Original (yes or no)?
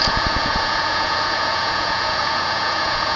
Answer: no